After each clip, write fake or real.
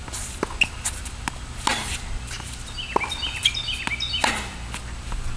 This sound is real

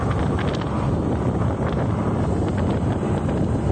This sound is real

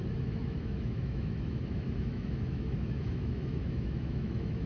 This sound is fake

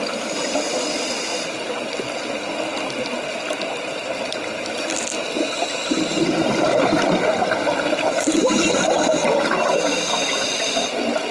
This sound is real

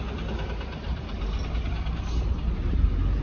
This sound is real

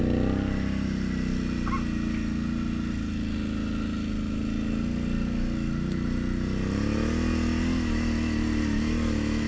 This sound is real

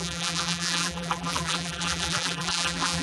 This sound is fake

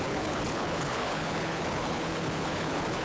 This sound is fake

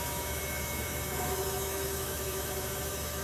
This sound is fake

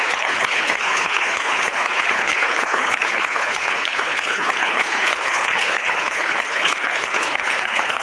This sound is fake